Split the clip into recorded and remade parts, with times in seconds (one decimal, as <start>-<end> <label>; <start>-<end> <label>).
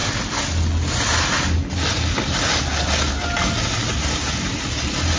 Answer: 0.0-5.2 recorded